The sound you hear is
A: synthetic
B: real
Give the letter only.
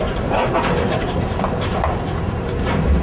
B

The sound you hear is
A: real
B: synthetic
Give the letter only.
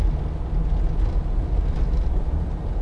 A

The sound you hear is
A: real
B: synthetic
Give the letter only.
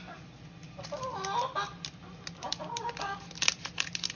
A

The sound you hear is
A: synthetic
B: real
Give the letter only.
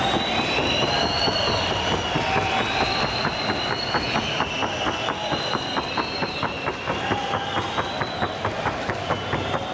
B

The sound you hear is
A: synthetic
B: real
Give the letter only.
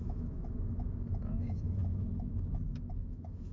A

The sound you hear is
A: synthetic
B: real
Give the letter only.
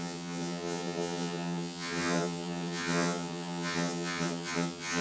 A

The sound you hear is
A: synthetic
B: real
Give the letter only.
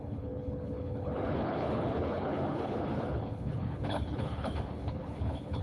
A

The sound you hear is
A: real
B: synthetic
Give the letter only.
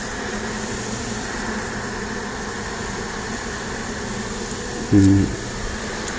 A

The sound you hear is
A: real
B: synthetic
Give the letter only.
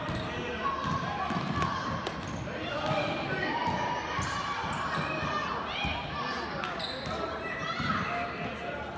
A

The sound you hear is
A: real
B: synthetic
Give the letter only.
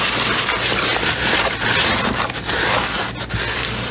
A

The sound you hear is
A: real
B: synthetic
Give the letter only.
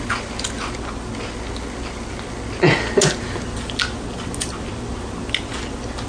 A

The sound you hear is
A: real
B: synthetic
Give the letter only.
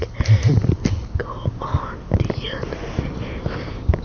A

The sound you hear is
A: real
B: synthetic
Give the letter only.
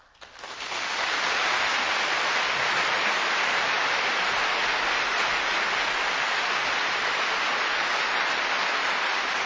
A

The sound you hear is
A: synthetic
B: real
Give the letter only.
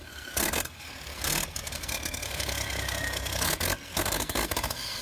A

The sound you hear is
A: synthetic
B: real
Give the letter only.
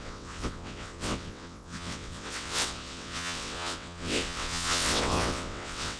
A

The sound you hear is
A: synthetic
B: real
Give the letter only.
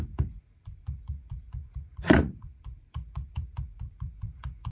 A